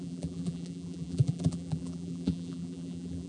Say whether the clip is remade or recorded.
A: remade